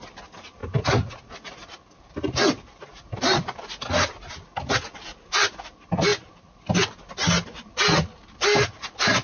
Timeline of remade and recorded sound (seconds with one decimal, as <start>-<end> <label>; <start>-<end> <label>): 0.0-9.2 recorded